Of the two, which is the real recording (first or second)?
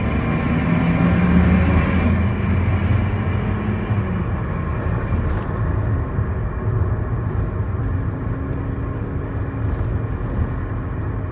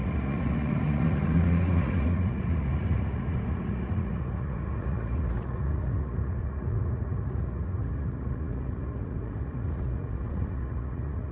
first